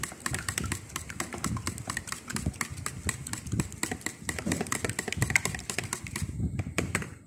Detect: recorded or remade recorded